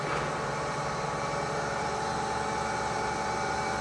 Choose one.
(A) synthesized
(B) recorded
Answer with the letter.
A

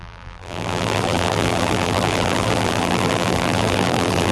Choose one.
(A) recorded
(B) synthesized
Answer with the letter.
B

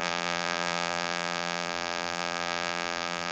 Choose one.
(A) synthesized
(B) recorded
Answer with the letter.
A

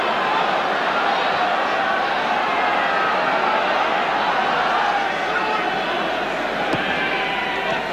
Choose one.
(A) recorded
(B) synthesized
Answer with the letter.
A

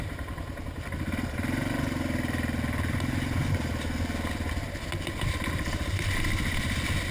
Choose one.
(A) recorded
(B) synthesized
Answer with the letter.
A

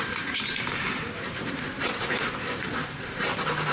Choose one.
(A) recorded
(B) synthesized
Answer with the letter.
B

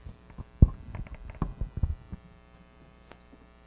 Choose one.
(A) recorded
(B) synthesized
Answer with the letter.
A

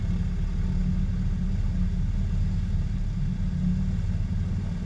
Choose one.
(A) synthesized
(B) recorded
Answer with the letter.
B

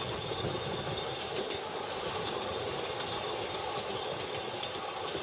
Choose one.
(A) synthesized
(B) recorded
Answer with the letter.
B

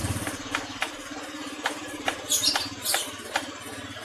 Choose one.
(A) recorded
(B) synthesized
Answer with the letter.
B